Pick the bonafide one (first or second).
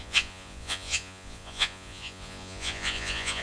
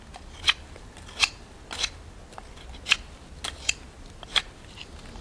second